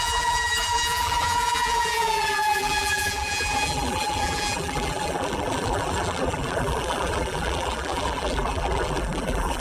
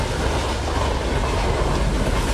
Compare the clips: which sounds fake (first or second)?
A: first